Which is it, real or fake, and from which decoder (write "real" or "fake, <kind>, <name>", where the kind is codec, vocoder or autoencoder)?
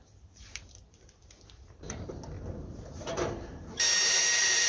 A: fake, vocoder, BigVGAN v2